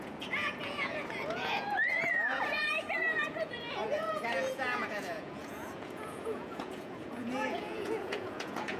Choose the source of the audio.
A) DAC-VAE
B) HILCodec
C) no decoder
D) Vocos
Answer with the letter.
D